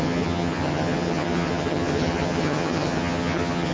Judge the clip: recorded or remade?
remade